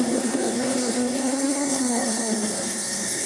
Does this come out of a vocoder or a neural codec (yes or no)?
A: yes